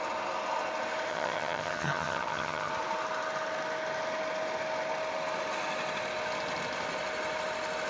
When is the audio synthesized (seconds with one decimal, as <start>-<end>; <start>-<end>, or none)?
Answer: 1.1-2.7